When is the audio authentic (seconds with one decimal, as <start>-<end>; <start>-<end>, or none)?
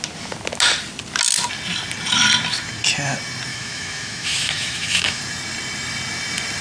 0.0-3.5; 5.2-6.6